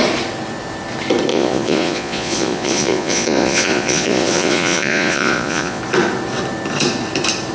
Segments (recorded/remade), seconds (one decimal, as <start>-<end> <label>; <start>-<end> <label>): 0.0-1.3 recorded; 1.3-5.8 remade; 5.8-7.5 recorded

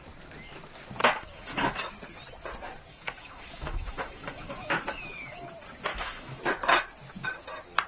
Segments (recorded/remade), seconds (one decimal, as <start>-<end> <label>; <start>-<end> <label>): 0.0-1.0 recorded; 1.0-1.9 remade; 1.9-2.9 recorded; 2.9-5.5 remade; 5.5-5.9 recorded; 5.9-6.4 remade; 6.4-7.9 recorded

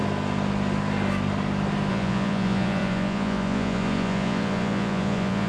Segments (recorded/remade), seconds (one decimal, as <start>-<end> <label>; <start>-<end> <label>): 0.0-1.9 recorded; 1.9-5.5 remade

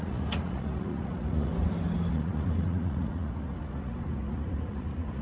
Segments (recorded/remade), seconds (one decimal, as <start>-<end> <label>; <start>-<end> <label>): 0.0-1.5 remade; 1.5-2.1 recorded; 2.1-5.2 remade

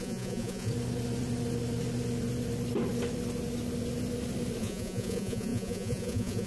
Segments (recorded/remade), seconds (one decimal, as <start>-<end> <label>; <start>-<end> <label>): 0.0-0.7 remade; 0.7-4.6 recorded; 4.6-6.5 remade

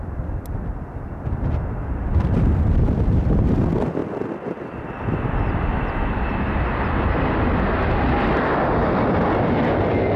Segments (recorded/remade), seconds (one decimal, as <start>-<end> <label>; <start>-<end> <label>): 0.0-10.2 recorded